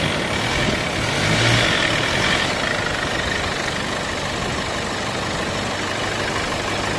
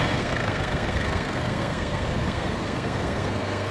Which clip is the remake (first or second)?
second